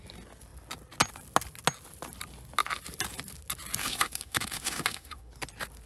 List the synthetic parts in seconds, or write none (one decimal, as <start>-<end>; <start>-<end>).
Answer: 3.8-5.3